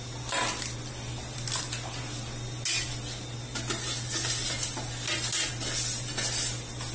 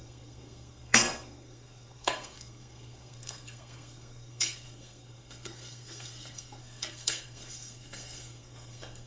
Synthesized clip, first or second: second